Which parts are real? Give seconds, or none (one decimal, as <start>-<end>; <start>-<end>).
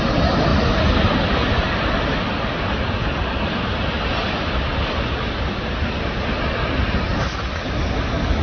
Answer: 0.0-8.4